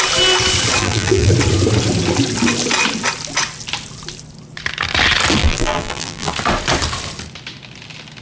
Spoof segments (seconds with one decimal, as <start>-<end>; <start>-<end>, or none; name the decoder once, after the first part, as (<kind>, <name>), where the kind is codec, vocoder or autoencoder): 0.8-1.3 (vocoder, BigVGAN v2); 5.4-6.3